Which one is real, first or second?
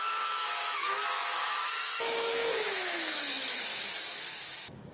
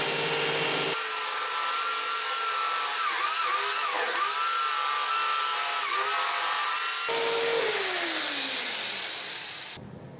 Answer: second